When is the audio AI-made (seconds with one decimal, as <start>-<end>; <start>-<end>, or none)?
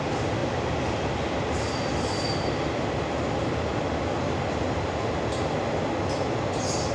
none